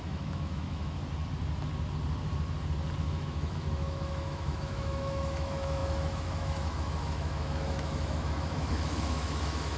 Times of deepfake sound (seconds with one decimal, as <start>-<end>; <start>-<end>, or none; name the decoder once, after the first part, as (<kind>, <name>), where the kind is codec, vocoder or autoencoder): 0.0-1.0 (autoencoder, DAC-VAE); 3.0-9.8